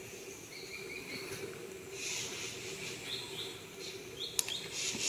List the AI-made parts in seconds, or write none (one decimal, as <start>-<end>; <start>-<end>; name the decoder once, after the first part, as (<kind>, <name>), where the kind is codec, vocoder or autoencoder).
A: none

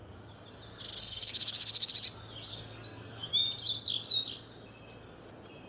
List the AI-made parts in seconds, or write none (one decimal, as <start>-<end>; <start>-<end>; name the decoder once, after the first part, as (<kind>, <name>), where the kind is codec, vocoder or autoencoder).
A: 1.0-1.9 (codec, SNAC); 2.5-3.3

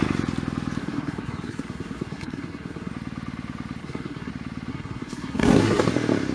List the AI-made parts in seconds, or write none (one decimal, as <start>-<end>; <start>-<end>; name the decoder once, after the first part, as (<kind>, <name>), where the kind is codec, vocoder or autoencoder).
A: 0.8-2.9 (codec, SNAC); 3.8-4.3; 4.7-5.8

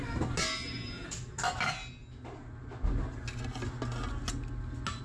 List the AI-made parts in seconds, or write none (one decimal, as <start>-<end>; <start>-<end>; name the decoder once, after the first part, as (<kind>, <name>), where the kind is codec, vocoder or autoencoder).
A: none

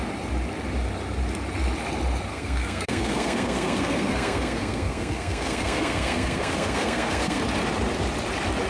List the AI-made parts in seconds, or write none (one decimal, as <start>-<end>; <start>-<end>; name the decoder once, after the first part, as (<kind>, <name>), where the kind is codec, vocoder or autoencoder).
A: 2.3-7.4 (codec, SNAC)

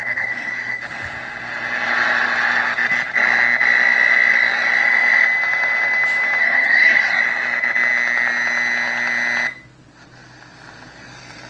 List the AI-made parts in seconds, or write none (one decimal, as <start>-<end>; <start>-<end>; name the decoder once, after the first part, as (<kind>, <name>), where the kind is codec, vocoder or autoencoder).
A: 0.0-0.8 (codec, SNAC); 6.4-7.2

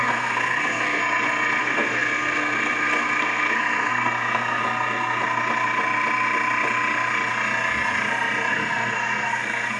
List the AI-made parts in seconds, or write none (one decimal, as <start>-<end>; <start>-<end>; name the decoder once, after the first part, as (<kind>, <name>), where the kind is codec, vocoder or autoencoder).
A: 0.0-1.0 (codec, SNAC); 1.6-4.6; 8.5-9.8